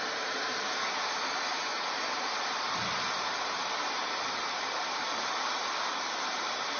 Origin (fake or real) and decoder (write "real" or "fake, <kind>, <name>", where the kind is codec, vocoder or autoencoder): fake, vocoder, BigVGAN v2